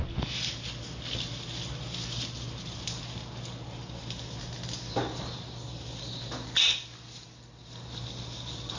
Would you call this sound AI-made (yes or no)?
no